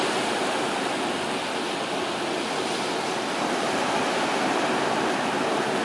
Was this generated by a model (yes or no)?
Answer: no